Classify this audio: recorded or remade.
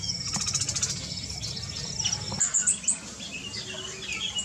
recorded